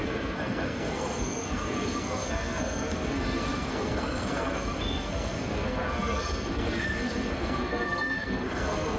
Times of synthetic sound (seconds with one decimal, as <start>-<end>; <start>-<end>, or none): 0.0-9.0